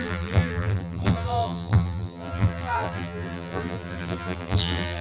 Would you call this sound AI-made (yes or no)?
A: yes